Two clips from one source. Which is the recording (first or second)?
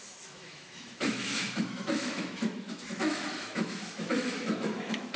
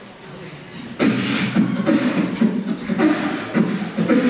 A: second